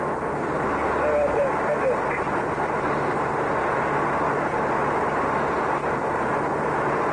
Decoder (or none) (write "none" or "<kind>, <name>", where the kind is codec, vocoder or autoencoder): none